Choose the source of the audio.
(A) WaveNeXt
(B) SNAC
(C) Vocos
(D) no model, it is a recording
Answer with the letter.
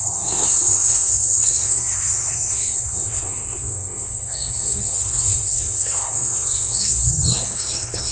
B